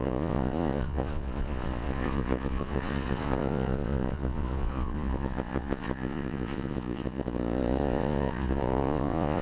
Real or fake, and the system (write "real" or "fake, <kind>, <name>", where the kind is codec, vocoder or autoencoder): fake, vocoder, Vocos